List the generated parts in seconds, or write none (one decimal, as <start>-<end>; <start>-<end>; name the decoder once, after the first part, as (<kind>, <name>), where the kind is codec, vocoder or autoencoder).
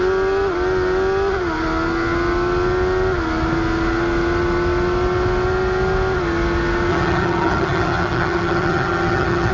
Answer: 6.9-9.5 (vocoder, HiFi-GAN)